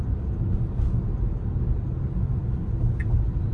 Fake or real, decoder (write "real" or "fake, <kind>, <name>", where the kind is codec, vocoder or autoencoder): real